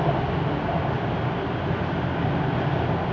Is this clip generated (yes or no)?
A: no